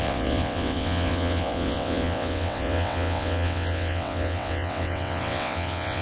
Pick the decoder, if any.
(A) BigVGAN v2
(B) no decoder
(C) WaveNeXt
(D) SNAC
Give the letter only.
C